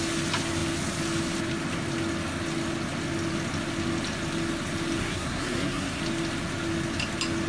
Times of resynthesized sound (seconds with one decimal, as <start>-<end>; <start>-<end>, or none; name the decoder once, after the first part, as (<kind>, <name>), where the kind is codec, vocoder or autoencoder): 5.0-6.0 (codec, SNAC)